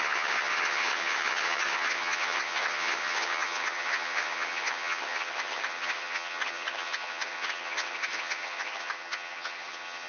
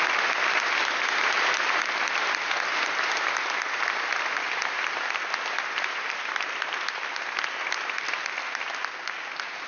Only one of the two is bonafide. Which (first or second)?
second